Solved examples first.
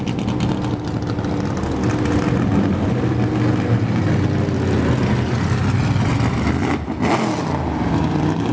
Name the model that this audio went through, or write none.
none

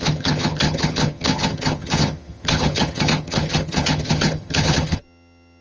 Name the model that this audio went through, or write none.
vocoder, HiFi-GAN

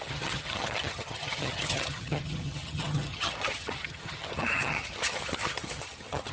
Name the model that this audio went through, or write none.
vocoder, HiFi-GAN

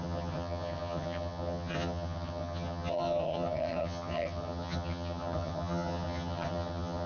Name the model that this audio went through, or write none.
vocoder, HiFi-GAN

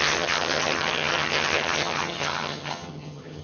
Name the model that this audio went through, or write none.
vocoder, HiFi-GAN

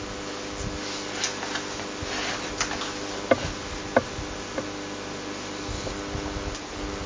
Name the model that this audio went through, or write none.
none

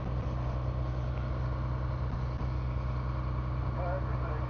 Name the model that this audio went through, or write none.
none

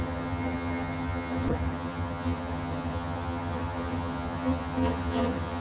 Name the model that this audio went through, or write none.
vocoder, HiFi-GAN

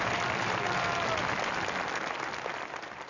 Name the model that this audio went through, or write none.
none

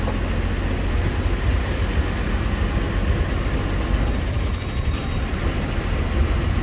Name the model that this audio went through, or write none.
none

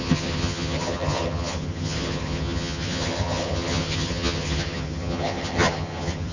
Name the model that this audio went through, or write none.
vocoder, HiFi-GAN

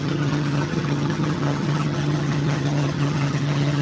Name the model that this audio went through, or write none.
vocoder, HiFi-GAN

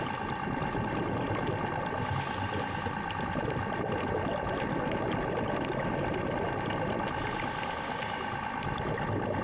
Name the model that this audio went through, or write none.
none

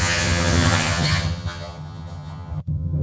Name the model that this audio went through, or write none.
vocoder, HiFi-GAN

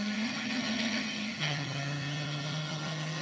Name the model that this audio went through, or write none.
vocoder, HiFi-GAN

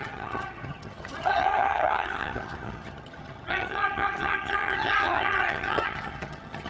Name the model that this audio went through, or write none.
vocoder, HiFi-GAN